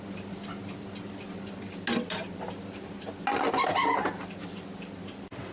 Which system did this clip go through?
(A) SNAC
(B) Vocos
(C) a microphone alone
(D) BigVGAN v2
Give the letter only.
C